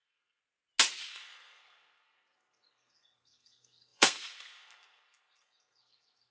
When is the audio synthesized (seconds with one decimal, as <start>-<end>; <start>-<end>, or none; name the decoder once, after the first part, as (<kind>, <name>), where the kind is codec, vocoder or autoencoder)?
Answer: 0.0-0.4 (codec, SNAC); 1.1-6.3